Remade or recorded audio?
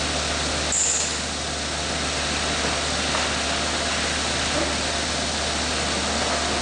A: recorded